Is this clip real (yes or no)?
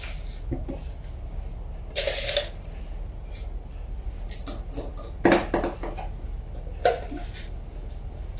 yes